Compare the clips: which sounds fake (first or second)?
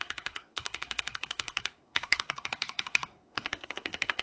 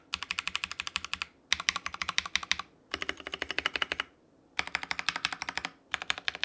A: first